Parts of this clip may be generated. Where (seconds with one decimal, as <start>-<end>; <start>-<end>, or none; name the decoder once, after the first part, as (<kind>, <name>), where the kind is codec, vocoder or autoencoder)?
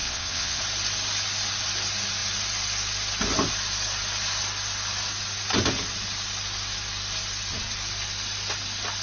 0.0-0.6 (vocoder, WaveNeXt)